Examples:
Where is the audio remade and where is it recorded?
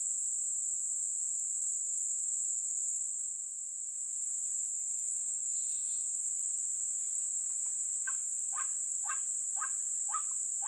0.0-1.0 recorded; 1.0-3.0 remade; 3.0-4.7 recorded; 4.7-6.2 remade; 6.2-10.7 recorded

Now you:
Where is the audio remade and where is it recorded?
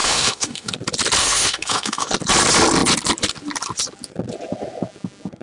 0.0-0.7 remade; 0.7-1.2 recorded; 1.2-2.1 remade; 2.1-5.4 recorded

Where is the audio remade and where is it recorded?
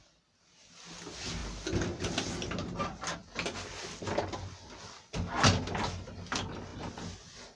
0.0-7.6 recorded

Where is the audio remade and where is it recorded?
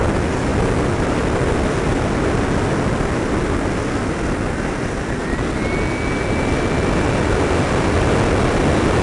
0.0-9.0 recorded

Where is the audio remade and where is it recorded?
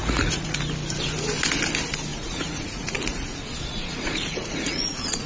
0.0-0.6 remade; 0.6-2.1 recorded; 2.1-5.3 remade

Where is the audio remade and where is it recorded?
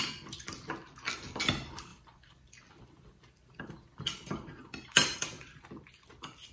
0.0-1.9 recorded; 1.9-4.0 remade; 4.0-5.1 recorded; 5.1-5.7 remade; 5.7-6.5 recorded